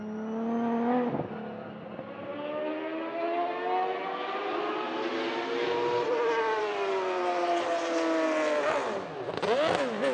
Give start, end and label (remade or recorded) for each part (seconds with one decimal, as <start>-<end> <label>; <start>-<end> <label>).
0.0-10.1 recorded